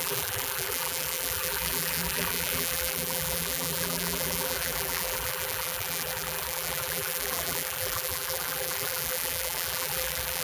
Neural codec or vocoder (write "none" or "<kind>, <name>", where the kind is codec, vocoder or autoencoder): vocoder, BigVGAN v2